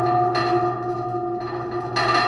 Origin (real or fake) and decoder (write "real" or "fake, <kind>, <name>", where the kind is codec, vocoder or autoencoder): real